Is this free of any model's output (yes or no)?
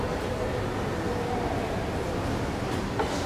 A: yes